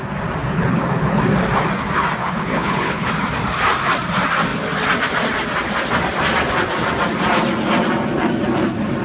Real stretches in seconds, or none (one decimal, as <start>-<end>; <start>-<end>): 0.0-0.4; 1.2-2.2; 3.1-9.0